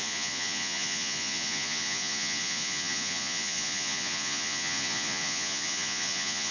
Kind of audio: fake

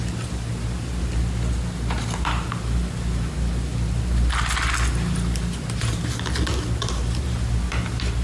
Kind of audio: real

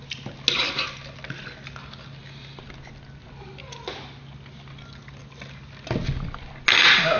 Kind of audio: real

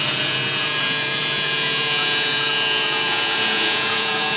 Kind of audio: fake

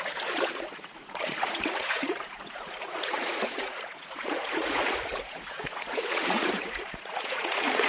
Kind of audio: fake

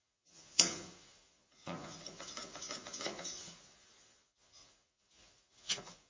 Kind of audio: fake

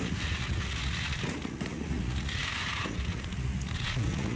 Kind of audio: fake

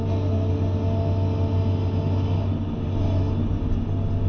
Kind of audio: real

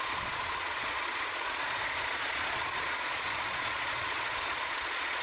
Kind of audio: fake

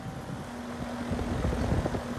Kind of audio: real